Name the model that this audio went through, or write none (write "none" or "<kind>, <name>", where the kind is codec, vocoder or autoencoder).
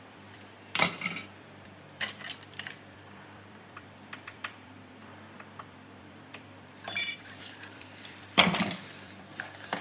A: vocoder, BigVGAN v2